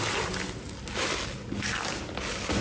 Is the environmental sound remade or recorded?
recorded